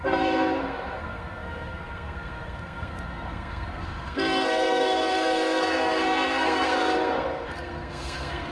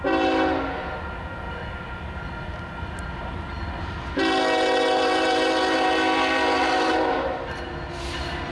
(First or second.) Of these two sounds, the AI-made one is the first